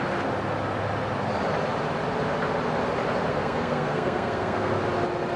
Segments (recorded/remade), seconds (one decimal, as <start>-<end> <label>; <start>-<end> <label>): 0.0-3.3 recorded; 3.3-4.7 remade; 4.7-5.4 recorded